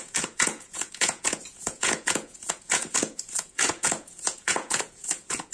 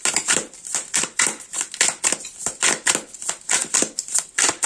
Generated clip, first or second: first